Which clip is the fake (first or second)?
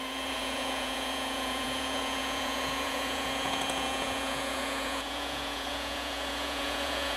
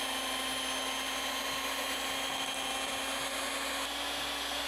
first